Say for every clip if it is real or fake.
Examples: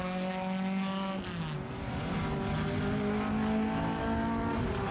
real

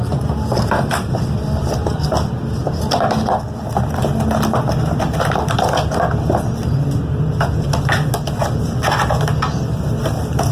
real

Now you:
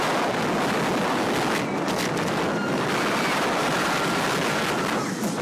real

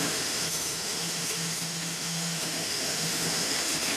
fake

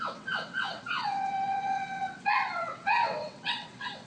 fake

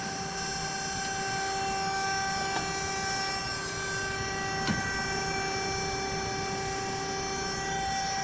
real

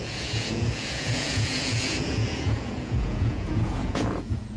fake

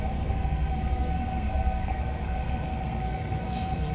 fake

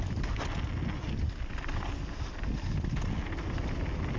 real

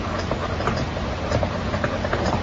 fake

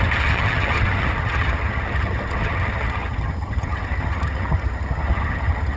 fake